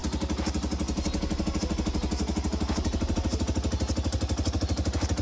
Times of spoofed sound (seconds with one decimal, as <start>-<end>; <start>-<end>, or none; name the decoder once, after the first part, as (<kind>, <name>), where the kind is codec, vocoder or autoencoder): none

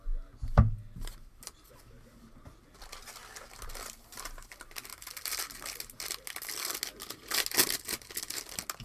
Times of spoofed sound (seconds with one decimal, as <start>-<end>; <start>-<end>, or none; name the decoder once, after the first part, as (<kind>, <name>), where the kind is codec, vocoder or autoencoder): none

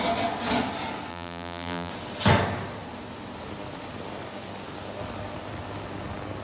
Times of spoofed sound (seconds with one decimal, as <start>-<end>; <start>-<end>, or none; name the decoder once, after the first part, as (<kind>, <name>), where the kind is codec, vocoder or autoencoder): 1.1-1.9 (vocoder, BigVGAN v2)

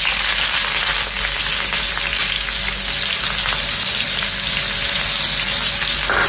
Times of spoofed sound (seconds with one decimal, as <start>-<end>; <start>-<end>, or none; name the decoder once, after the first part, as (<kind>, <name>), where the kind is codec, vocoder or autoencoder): none

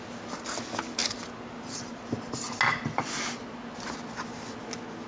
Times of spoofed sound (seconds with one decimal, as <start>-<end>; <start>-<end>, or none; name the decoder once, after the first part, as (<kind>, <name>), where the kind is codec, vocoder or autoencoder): none